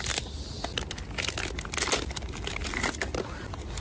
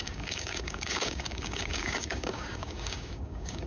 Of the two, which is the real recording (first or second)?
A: first